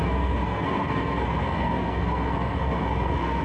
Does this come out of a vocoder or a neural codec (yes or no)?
yes